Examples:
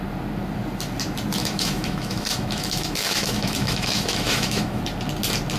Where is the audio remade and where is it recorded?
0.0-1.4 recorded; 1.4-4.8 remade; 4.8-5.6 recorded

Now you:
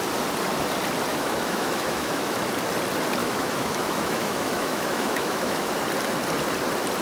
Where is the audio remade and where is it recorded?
0.0-1.1 recorded; 1.1-2.4 remade; 2.4-3.2 recorded; 3.2-5.7 remade; 5.7-7.0 recorded

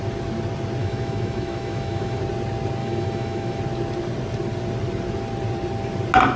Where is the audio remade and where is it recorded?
0.0-0.8 recorded; 0.8-2.2 remade; 2.2-2.8 recorded; 2.8-3.6 remade; 3.6-6.4 recorded

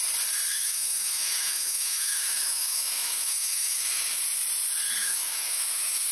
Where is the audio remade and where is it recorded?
0.0-0.5 recorded; 0.5-4.2 remade; 4.2-5.0 recorded; 5.0-6.1 remade

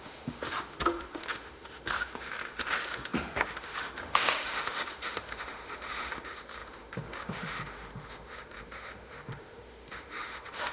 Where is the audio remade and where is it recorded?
0.0-10.7 remade